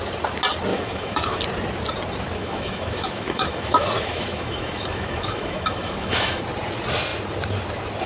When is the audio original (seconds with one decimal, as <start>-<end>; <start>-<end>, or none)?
0.0-0.7; 1.4-2.4; 6.4-8.1